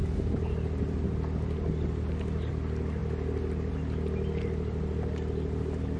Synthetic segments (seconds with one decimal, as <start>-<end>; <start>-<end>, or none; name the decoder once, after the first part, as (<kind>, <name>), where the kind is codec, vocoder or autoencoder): none